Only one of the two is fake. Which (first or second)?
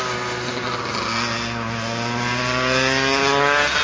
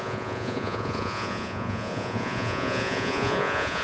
second